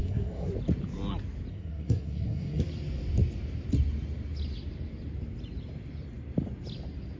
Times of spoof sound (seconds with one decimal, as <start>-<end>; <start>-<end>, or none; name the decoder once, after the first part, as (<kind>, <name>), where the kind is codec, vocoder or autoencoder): 0.0-0.5 (codec, SNAC); 1.5-2.6